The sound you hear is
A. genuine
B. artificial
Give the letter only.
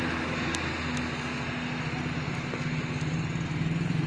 A